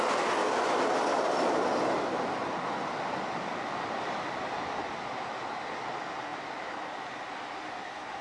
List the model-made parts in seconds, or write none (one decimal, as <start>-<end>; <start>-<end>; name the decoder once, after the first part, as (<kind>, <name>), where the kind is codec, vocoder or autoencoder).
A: none